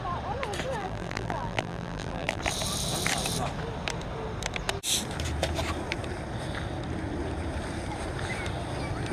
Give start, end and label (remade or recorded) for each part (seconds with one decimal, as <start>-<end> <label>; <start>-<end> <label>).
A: 0.0-0.8 recorded; 0.8-2.4 remade; 2.4-9.1 recorded